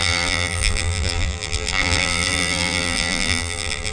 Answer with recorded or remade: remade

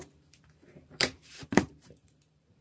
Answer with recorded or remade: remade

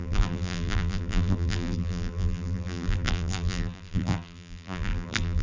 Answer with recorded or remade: remade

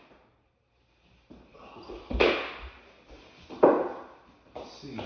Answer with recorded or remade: recorded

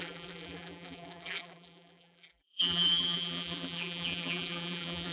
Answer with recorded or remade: remade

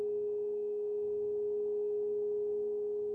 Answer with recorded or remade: recorded